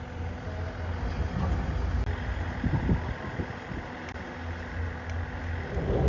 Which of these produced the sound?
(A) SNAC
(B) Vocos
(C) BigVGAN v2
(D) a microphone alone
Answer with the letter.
D